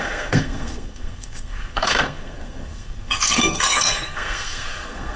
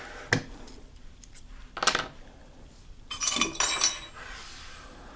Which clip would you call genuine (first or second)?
second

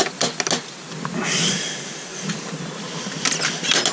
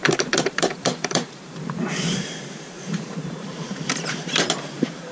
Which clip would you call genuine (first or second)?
first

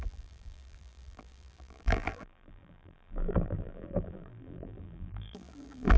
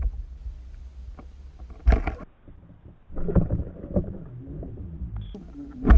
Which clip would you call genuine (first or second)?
second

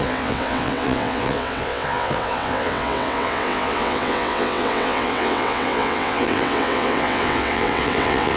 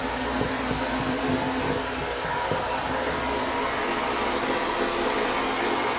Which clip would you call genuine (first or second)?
second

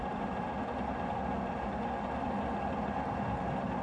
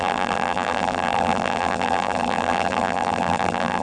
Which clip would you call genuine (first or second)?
first